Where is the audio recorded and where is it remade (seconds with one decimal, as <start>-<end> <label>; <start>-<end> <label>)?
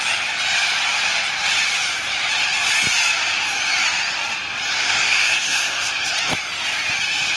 0.0-4.7 recorded; 4.7-5.9 remade; 5.9-7.4 recorded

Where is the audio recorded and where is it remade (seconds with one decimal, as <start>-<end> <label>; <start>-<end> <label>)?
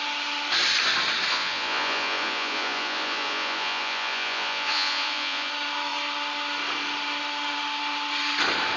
0.0-1.3 recorded; 1.3-5.5 remade; 5.5-8.8 recorded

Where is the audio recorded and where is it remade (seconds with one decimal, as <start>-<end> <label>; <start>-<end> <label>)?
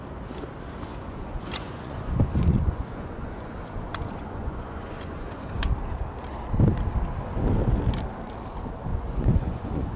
0.0-0.9 recorded; 0.9-5.7 remade; 5.7-8.9 recorded; 8.9-10.0 remade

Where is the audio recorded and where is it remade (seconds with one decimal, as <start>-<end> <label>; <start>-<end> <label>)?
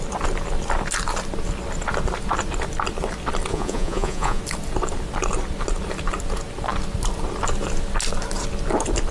0.0-3.5 recorded; 3.5-4.4 remade; 4.4-9.1 recorded